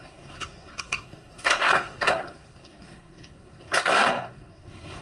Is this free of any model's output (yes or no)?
no